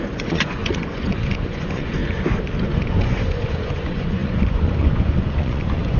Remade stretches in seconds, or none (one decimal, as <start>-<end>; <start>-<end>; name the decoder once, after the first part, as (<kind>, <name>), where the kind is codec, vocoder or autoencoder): 0.0-2.0 (vocoder, Vocos); 2.6-6.0